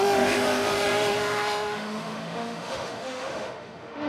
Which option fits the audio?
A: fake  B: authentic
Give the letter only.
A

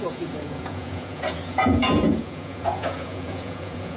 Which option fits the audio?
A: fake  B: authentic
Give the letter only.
A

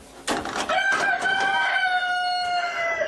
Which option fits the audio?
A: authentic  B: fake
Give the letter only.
A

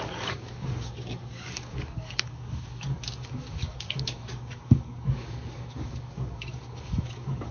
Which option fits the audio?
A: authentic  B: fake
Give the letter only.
B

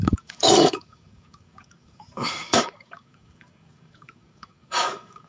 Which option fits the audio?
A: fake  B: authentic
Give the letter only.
A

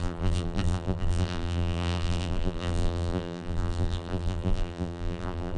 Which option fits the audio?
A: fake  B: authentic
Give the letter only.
A